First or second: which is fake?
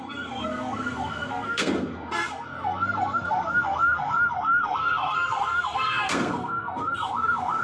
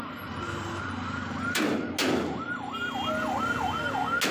first